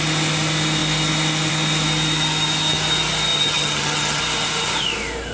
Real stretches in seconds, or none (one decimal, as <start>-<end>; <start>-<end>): 0.0-3.3; 4.2-5.3